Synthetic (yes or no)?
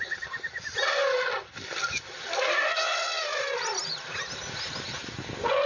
no